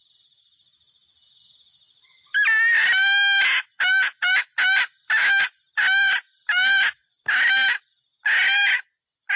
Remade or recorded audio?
recorded